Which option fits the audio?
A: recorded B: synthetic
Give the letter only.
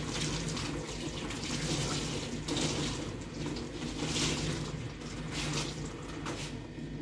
A